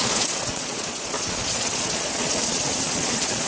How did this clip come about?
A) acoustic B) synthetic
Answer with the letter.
B